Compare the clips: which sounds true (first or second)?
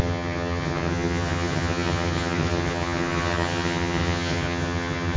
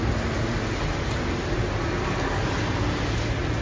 second